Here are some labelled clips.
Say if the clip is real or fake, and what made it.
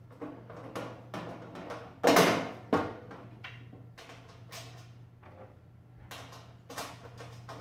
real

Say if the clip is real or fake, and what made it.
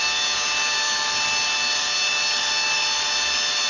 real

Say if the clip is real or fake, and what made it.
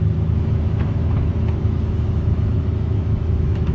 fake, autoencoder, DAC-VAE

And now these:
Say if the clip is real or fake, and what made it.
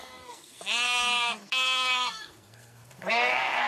fake, codec, SNAC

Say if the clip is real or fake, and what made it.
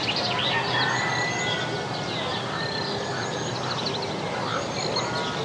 real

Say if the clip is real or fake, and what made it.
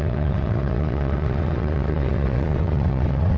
fake, vocoder, WaveNeXt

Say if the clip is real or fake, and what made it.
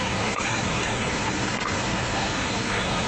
fake, codec, SNAC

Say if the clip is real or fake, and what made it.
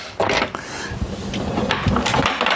real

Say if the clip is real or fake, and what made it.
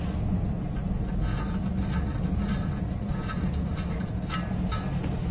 real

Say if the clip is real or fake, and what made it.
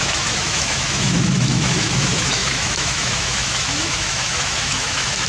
fake, autoencoder, DAC-VAE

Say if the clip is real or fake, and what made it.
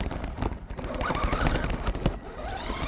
real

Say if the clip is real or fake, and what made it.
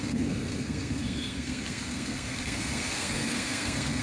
fake, codec, SNAC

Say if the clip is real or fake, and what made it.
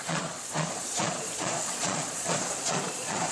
fake, vocoder, Vocos